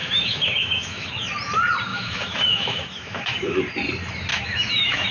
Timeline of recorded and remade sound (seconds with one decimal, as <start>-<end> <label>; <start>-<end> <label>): 0.0-1.1 remade; 1.1-1.9 recorded; 1.9-3.6 remade; 3.6-4.3 recorded; 4.3-5.1 remade